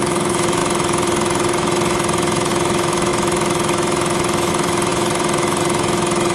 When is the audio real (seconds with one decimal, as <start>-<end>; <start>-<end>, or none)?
none